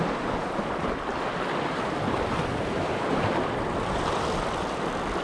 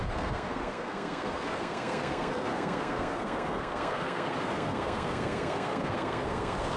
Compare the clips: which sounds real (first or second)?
first